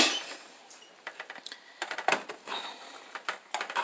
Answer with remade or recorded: recorded